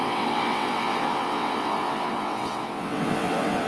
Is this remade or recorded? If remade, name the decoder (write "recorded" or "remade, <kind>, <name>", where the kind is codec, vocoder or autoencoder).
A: remade, vocoder, WaveNeXt